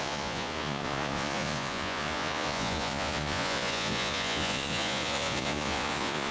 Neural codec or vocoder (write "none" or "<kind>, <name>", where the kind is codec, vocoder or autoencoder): vocoder, Vocos